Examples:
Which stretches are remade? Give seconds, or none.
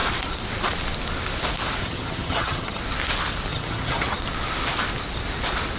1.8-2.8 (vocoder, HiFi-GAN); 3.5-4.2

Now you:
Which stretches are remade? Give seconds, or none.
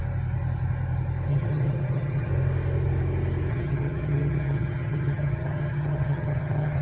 1.3-2.3 (vocoder, HiFi-GAN); 3.5-6.8